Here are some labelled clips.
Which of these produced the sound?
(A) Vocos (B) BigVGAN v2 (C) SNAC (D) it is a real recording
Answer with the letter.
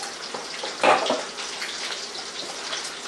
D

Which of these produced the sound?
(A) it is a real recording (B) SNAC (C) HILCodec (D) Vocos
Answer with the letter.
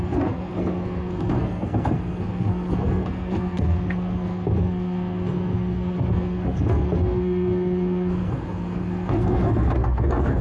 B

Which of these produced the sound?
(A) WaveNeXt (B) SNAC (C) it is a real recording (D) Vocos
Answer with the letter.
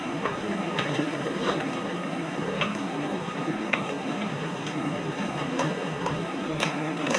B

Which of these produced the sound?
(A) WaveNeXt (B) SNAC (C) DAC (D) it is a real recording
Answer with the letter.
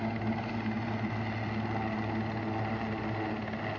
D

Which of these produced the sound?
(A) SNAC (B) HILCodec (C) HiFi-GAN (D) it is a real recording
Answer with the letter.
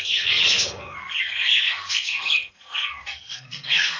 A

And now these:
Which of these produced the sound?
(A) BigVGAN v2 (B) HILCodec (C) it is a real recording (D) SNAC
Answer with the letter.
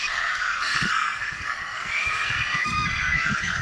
D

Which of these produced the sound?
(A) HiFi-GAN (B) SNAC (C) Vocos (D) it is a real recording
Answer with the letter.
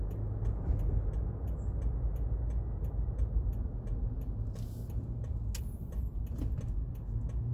D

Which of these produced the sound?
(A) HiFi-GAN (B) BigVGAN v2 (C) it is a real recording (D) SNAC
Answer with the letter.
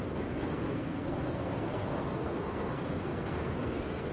D